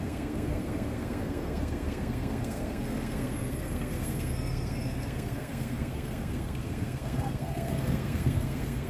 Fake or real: fake